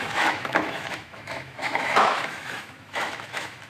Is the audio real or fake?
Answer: fake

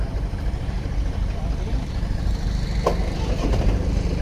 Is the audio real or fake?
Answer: real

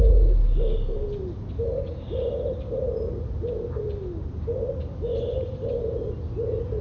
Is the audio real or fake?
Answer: real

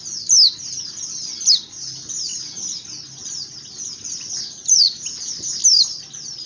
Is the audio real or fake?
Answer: real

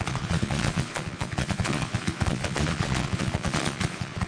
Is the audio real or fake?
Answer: fake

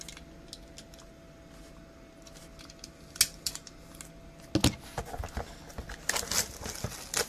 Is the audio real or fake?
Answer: real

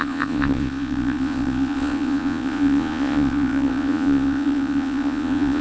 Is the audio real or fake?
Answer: fake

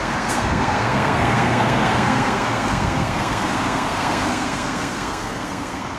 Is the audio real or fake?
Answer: fake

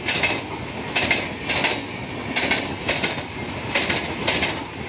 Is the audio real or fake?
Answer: real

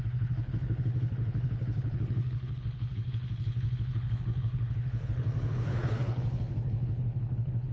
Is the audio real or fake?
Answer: fake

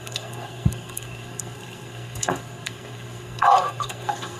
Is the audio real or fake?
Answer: fake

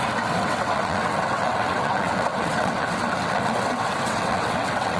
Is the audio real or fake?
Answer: fake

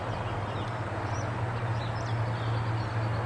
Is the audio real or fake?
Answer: real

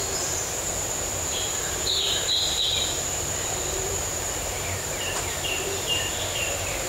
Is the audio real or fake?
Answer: fake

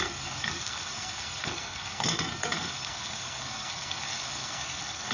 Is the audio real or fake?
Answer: fake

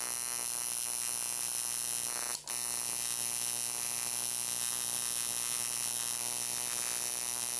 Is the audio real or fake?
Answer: real